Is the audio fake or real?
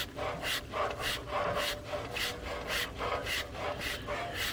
real